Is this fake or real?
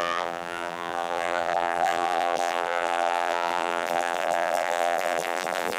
fake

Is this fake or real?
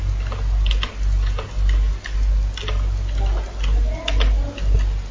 real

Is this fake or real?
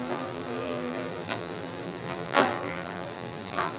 fake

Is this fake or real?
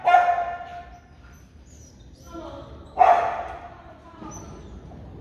real